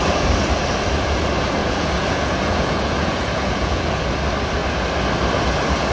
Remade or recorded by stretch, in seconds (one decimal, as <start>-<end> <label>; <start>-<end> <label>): 0.0-1.6 recorded; 1.6-4.1 remade; 4.1-5.9 recorded